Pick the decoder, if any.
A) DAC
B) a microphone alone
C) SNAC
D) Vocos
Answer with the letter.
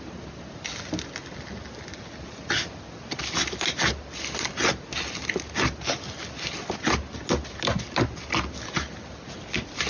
B